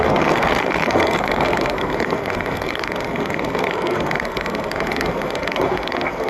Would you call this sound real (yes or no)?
no